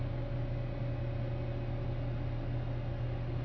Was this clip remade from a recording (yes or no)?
no